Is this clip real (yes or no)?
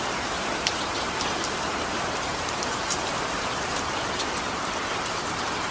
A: no